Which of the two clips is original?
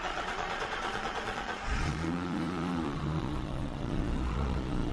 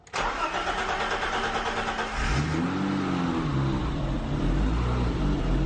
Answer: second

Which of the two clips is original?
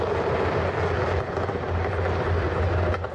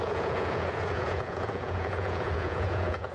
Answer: first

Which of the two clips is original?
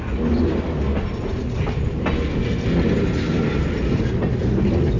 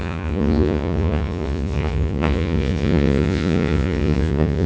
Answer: first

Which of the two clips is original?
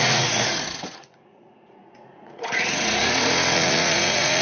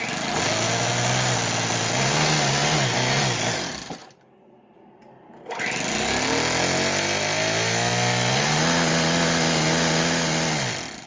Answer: second